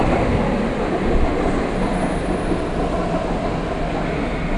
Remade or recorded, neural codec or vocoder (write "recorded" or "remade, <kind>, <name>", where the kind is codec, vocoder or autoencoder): recorded